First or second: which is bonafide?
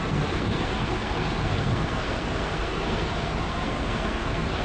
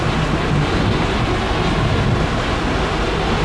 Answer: second